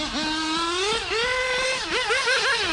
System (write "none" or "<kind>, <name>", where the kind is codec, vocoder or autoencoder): none